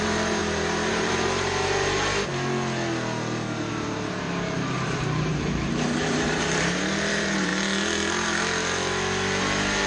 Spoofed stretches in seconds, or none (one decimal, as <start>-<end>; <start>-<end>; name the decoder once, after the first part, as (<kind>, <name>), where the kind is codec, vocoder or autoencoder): 0.0-0.4 (vocoder, BigVGAN v2); 0.9-2.3; 3.7-7.5; 9.4-9.9